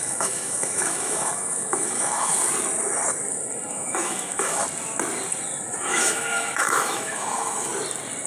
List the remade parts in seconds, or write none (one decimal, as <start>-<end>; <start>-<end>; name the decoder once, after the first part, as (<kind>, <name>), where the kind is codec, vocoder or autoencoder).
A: 0.0-2.3 (autoencoder, DAC-VAE); 3.7-4.6; 5.8-7.7